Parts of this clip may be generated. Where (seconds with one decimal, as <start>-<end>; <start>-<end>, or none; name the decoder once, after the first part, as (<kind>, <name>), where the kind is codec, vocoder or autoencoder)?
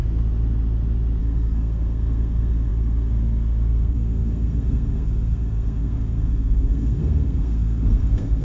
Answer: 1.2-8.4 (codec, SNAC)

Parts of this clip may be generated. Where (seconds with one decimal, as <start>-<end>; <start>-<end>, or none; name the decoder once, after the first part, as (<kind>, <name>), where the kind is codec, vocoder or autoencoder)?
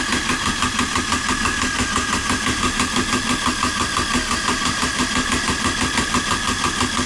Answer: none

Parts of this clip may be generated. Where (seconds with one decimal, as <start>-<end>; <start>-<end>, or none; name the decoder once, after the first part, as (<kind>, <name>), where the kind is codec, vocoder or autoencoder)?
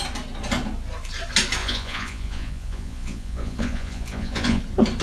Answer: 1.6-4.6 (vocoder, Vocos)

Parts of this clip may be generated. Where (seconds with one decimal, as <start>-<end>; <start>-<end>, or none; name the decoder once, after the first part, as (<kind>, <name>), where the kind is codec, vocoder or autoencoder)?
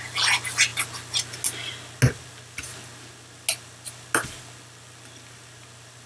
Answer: none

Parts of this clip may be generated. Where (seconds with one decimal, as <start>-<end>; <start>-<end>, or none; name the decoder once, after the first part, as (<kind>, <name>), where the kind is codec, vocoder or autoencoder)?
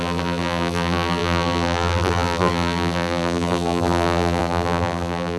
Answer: 0.0-5.4 (vocoder, BigVGAN v2)